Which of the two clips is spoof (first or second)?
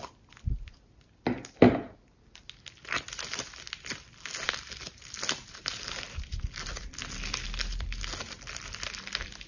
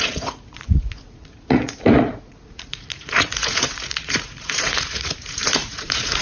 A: second